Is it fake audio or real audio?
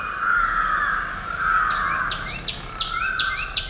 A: real